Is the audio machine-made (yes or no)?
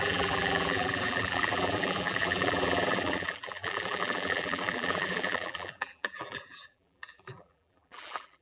yes